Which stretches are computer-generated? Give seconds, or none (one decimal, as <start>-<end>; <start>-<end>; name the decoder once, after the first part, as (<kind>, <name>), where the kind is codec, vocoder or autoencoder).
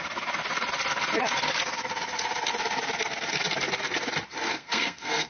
4.5-5.3 (codec, SNAC)